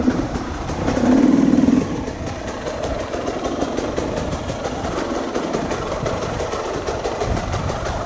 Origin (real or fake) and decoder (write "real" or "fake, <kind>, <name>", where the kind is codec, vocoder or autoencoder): fake, vocoder, BigVGAN v2